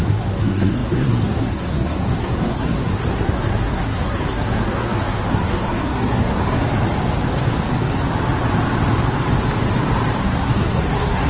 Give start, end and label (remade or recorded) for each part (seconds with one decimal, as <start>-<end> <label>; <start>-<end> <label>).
0.0-6.4 remade; 6.4-10.2 recorded; 10.2-11.3 remade